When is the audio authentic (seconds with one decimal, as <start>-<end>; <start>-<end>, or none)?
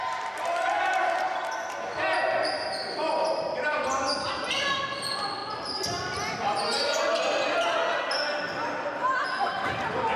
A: 0.0-10.2